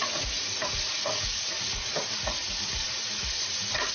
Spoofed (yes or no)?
yes